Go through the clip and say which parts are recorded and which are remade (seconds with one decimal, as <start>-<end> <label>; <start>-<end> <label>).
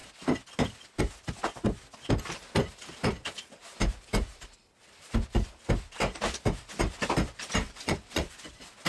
0.0-7.6 recorded; 7.6-8.5 remade; 8.5-8.9 recorded